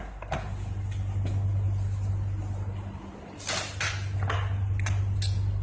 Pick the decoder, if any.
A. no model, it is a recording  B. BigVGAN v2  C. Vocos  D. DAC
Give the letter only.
A